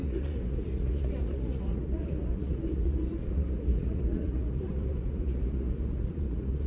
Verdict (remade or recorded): remade